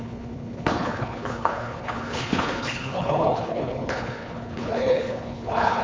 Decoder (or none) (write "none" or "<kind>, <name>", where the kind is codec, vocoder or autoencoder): codec, HILCodec